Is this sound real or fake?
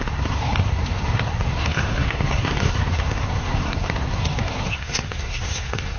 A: fake